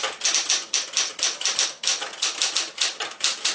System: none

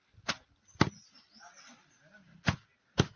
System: none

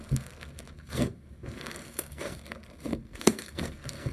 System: codec, SNAC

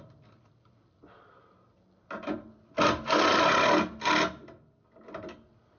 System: none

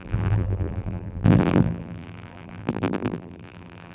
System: vocoder, BigVGAN v2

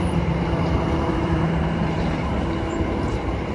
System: vocoder, BigVGAN v2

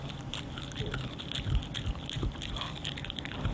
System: vocoder, BigVGAN v2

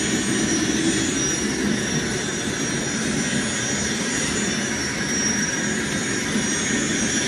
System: none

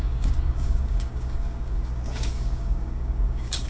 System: codec, DAC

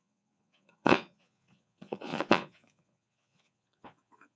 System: vocoder, Vocos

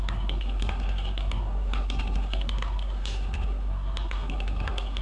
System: codec, SNAC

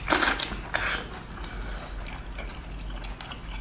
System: none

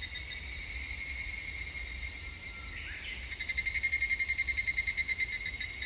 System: none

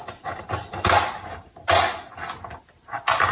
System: none